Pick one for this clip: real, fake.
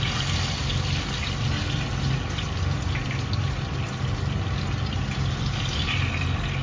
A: real